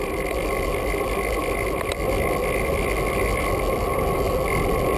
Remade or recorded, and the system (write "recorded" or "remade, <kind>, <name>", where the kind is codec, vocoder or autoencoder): recorded